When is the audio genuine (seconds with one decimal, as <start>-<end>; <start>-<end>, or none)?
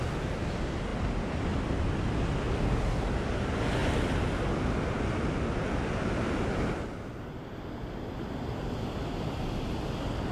0.0-10.3